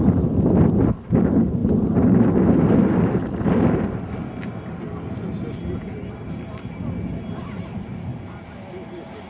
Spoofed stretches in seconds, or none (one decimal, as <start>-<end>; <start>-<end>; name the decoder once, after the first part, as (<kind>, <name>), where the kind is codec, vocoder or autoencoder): none